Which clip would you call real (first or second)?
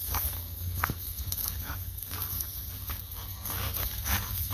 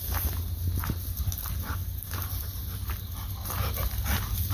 second